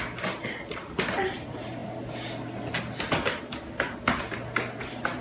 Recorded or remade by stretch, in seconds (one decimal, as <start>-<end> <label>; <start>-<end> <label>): 0.0-5.2 recorded